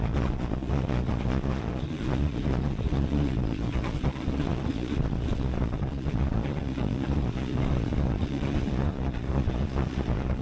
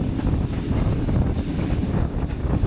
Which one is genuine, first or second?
second